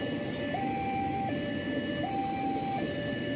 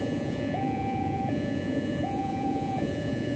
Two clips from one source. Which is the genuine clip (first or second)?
first